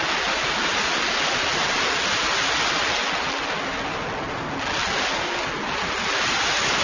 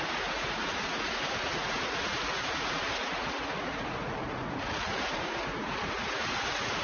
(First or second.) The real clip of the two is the first